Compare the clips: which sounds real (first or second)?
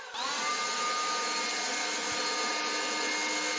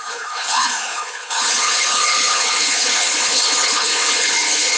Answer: first